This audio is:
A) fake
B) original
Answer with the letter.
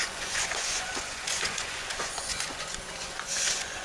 A